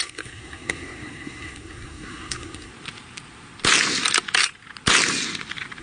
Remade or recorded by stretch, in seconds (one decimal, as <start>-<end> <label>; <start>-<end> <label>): 0.0-2.7 remade; 2.7-5.8 recorded